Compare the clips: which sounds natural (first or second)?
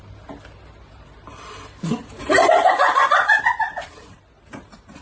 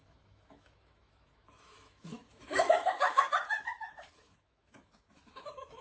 first